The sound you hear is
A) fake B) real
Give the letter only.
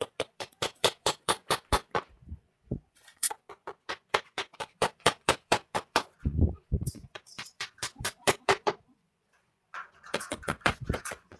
A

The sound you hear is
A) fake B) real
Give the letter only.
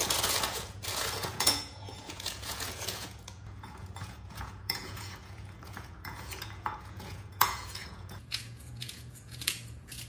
A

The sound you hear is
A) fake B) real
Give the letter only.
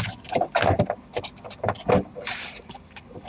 B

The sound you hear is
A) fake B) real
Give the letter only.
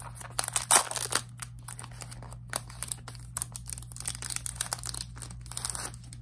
B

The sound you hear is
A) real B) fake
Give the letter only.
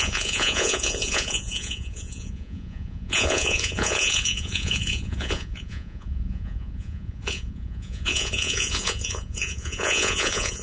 B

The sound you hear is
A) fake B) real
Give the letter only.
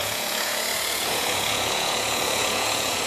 A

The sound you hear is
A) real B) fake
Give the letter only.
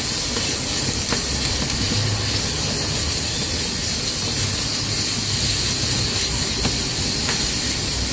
A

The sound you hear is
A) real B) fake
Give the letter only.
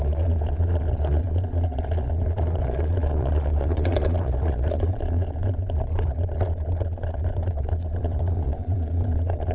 B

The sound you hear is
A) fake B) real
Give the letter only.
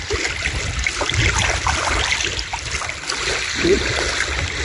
B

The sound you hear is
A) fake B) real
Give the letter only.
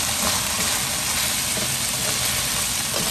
B